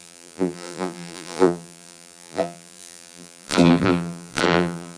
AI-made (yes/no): yes